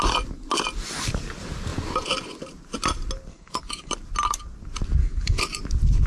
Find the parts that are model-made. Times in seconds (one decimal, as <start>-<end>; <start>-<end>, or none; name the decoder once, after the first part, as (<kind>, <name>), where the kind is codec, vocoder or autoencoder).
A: 3.3-3.9 (codec, DAC); 5.0-5.6